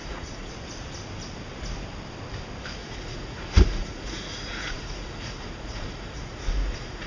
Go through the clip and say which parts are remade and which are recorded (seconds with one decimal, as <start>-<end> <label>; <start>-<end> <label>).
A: 0.0-0.5 remade; 0.5-2.8 recorded; 2.8-7.1 remade